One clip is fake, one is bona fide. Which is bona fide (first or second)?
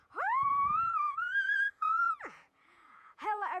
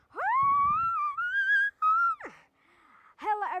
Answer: second